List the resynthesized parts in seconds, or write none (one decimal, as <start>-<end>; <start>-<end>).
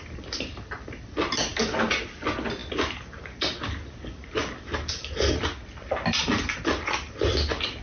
none